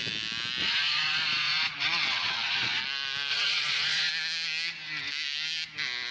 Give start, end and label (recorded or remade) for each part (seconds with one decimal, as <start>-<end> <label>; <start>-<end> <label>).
0.0-0.6 recorded; 0.6-2.8 remade; 2.8-3.3 recorded; 3.3-4.1 remade; 4.1-6.1 recorded